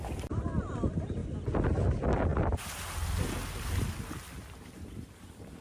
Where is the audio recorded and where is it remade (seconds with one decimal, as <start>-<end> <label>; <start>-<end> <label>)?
0.0-5.6 recorded

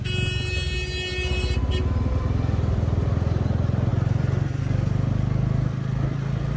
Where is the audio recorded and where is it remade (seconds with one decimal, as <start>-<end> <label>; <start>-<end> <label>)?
0.0-3.9 recorded; 3.9-4.6 remade; 4.6-6.6 recorded

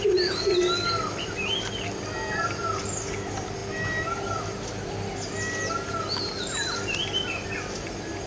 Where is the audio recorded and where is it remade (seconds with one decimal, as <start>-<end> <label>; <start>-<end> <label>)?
0.0-8.3 recorded

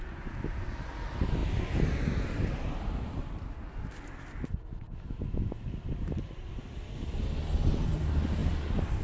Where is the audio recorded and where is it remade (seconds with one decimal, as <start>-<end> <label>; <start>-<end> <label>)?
0.0-9.0 recorded